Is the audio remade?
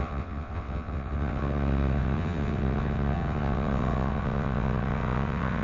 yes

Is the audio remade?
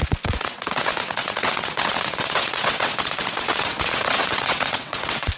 yes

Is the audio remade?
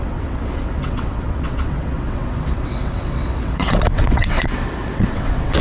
yes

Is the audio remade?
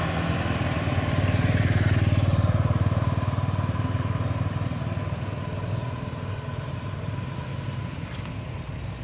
no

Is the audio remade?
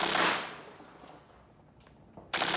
no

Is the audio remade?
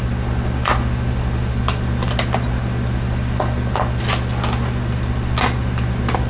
no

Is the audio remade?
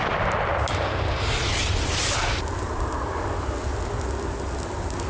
no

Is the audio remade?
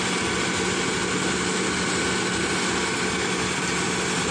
no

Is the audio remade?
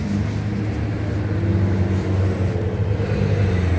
no